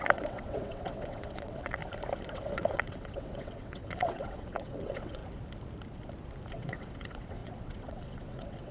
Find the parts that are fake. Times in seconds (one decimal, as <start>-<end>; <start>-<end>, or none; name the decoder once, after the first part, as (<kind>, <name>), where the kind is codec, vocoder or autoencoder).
0.0-1.8 (vocoder, WaveNeXt); 2.3-5.2; 6.5-8.7